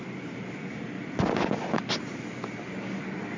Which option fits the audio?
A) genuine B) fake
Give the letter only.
A